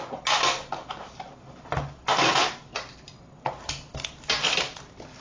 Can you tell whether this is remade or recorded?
recorded